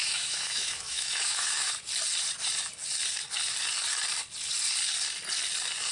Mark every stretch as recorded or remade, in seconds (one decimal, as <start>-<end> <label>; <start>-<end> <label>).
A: 0.0-1.7 remade; 1.7-5.9 recorded